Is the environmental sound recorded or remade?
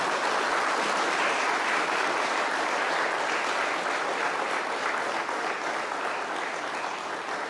recorded